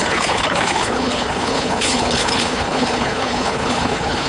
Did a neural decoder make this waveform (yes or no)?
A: yes